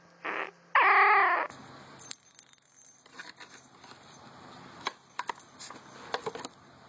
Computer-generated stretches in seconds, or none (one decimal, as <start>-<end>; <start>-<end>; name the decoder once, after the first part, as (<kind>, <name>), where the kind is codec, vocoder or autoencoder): 1.2-5.3 (vocoder, BigVGAN v2)